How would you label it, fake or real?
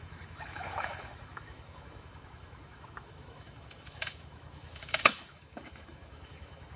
fake